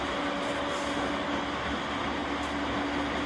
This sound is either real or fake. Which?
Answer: real